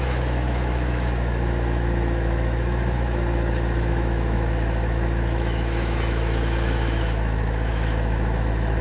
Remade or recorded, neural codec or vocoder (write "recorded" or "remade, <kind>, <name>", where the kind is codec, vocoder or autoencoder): remade, autoencoder, DAC-VAE